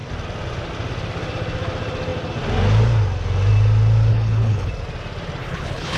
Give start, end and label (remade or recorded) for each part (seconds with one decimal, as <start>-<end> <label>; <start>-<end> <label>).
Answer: 0.0-4.1 recorded; 4.1-4.7 remade; 4.7-5.4 recorded; 5.4-6.0 remade